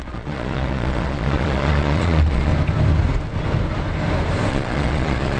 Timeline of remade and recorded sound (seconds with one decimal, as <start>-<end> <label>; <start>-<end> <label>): 0.0-2.5 remade; 2.5-4.5 recorded; 4.5-5.4 remade